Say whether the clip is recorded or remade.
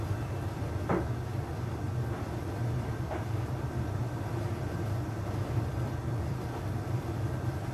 remade